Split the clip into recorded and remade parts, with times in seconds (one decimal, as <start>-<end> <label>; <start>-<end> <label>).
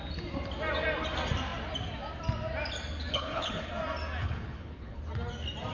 0.0-3.1 recorded; 3.1-3.7 remade; 3.7-4.2 recorded; 4.2-5.0 remade; 5.0-5.7 recorded